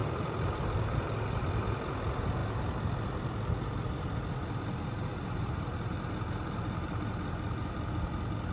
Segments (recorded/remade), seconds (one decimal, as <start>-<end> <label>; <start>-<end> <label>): 0.0-0.6 remade; 0.6-5.1 recorded; 5.1-6.1 remade; 6.1-8.5 recorded